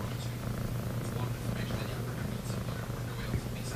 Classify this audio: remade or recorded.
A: recorded